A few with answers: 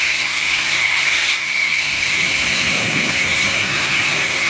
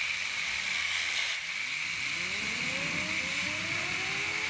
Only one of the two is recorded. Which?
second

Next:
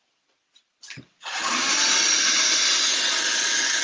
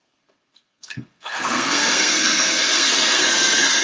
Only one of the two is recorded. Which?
first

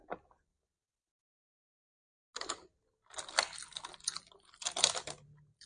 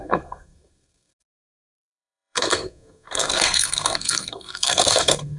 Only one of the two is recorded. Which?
first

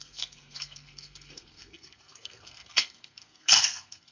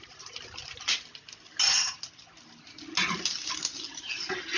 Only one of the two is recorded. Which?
second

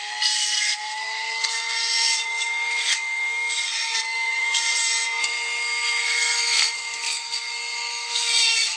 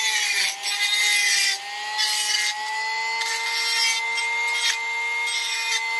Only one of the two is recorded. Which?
second